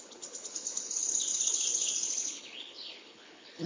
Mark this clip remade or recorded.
remade